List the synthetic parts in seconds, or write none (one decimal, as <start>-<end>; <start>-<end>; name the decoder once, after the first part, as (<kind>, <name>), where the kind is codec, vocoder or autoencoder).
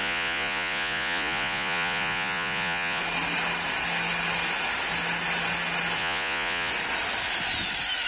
0.0-3.0 (vocoder, Vocos); 6.0-6.7